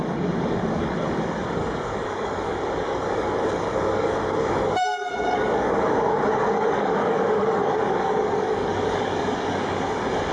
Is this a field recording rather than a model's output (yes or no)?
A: no